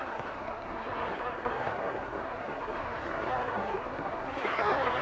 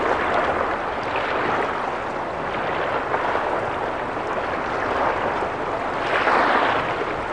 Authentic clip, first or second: second